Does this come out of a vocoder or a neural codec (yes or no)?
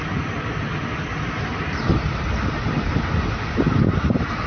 no